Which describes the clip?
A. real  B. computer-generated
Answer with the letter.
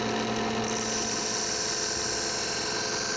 A